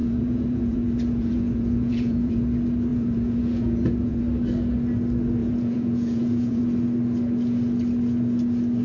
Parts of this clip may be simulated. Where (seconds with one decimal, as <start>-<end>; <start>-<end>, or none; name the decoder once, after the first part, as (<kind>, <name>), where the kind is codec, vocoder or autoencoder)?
0.0-2.4 (vocoder, Vocos); 2.9-4.2; 5.4-6.6